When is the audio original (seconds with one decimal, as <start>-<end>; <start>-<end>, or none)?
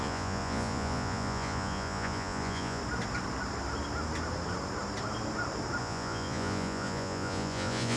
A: 2.8-5.8